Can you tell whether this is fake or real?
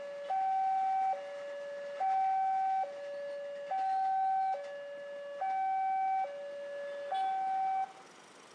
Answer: real